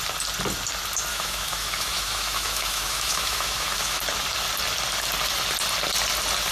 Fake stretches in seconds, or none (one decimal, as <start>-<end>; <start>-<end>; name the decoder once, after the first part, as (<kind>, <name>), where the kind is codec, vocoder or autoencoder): 1.1-4.0 (autoencoder, DAC-VAE)